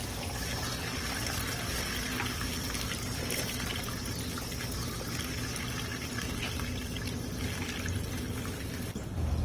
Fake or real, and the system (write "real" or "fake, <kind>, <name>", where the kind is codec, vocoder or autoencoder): real